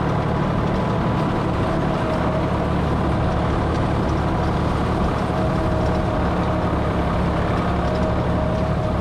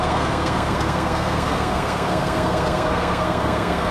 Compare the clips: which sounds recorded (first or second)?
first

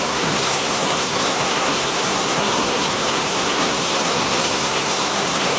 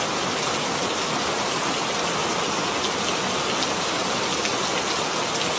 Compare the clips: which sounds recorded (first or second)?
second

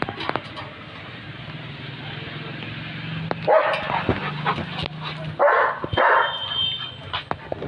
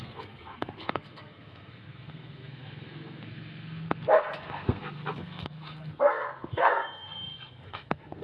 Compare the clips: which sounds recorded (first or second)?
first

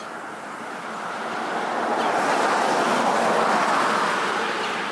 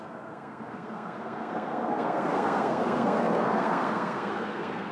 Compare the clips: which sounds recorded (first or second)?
first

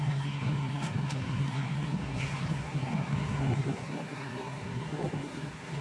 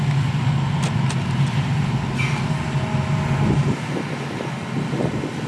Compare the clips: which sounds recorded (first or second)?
second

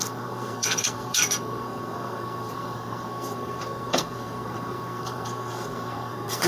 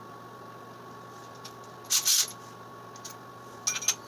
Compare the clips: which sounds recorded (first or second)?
second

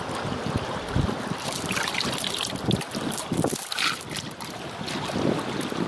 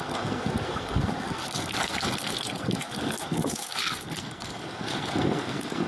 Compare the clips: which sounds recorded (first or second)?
first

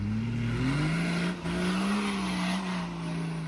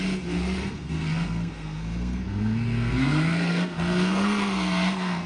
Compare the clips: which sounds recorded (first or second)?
first